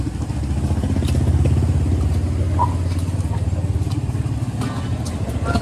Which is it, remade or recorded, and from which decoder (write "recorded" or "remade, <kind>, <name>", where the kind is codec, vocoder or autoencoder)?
recorded